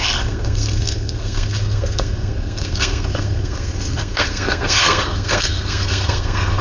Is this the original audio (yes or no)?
no